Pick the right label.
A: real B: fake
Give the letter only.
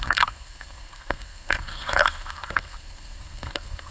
B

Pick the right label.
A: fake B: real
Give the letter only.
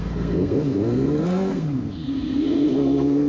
A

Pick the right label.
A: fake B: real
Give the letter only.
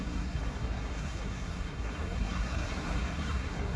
A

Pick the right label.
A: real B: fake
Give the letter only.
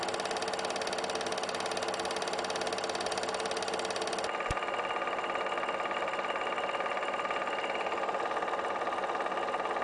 A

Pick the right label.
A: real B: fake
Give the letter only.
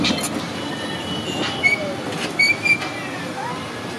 A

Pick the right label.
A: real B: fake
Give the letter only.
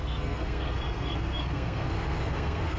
B